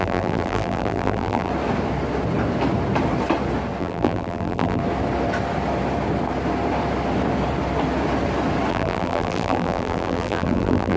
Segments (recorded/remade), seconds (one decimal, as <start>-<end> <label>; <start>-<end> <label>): 0.0-1.5 remade; 1.5-3.8 recorded; 3.8-4.8 remade; 4.8-8.7 recorded; 8.7-11.0 remade